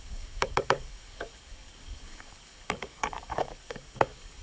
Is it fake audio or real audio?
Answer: fake